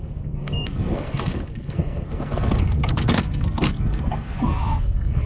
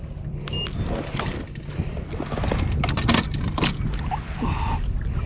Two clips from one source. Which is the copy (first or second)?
first